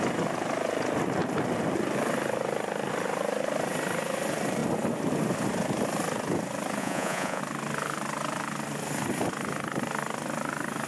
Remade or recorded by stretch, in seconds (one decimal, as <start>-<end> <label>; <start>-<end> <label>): 0.0-6.8 recorded; 6.8-7.4 remade; 7.4-10.9 recorded